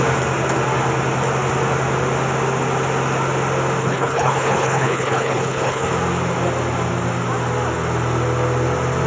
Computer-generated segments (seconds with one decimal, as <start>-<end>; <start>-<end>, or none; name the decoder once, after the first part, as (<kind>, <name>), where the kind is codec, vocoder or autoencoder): 3.8-5.9 (codec, HILCodec)